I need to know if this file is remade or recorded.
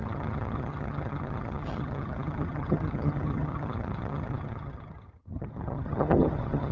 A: remade